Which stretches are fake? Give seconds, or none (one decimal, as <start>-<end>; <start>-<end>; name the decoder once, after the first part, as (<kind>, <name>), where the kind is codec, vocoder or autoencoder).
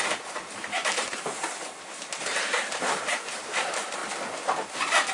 0.0-4.0 (vocoder, BigVGAN v2)